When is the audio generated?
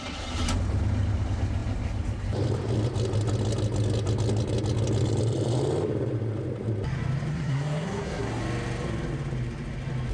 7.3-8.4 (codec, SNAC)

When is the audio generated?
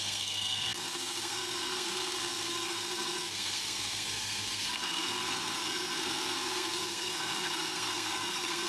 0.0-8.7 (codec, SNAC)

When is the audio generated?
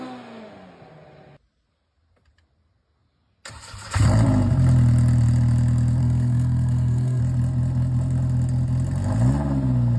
6.0-7.2 (codec, SNAC)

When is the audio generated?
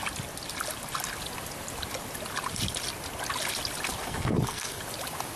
4.0-4.8 (codec, SNAC)